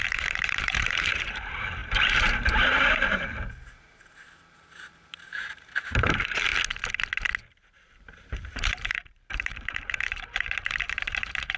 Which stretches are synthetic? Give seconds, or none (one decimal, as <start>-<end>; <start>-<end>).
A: 0.0-6.5; 7.5-11.6